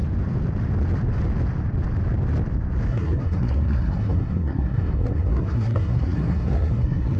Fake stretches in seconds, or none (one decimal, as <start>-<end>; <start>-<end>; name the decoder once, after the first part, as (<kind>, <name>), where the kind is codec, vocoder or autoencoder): 2.9-7.2 (codec, SNAC)